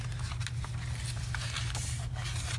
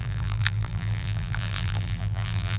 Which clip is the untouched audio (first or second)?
first